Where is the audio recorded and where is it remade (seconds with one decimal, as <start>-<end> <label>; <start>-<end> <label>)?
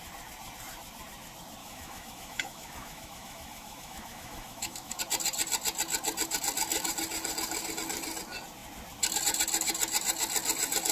0.0-1.6 recorded; 1.6-5.0 remade; 5.0-10.9 recorded